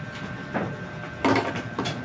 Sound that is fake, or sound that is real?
real